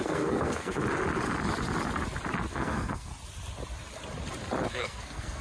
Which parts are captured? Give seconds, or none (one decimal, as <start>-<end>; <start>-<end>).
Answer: 0.8-2.5; 3.1-4.7